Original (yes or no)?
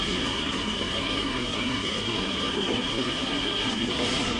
no